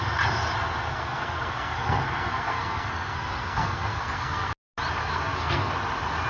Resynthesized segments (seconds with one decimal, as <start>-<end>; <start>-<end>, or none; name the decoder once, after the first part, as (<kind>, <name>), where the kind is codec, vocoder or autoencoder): 0.9-4.5 (codec, SNAC); 5.0-5.7